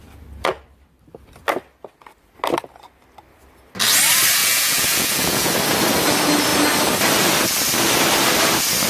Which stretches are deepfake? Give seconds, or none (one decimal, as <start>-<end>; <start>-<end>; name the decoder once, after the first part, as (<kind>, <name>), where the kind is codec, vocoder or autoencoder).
4.4-5.5 (vocoder, Vocos)